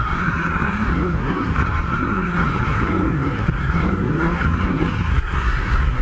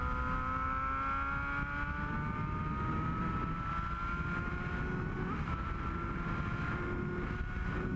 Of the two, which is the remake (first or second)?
first